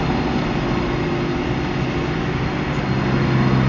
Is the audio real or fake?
real